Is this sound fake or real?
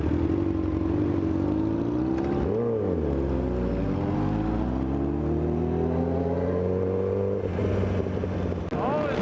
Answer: real